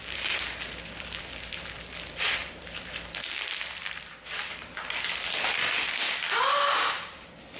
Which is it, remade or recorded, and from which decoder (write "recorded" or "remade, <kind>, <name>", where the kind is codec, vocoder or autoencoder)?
remade, vocoder, BigVGAN v2